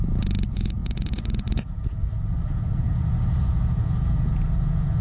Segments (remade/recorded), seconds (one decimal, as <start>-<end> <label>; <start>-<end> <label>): 0.0-5.0 remade